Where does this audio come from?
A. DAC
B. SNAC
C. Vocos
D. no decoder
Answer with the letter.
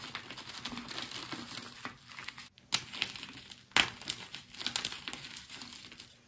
D